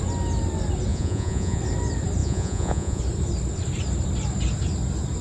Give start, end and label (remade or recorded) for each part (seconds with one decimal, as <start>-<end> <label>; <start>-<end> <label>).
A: 0.0-0.9 recorded; 0.9-1.6 remade; 1.6-2.2 recorded; 2.2-3.0 remade; 3.0-5.2 recorded